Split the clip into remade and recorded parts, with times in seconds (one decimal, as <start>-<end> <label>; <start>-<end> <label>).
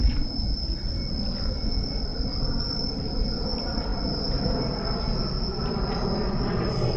0.0-2.1 recorded; 2.1-3.4 remade; 3.4-7.0 recorded